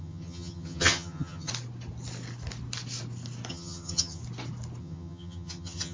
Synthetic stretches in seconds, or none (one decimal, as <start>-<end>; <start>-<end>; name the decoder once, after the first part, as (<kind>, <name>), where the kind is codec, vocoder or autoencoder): 0.0-1.5 (vocoder, HiFi-GAN); 3.5-4.2; 4.8-5.9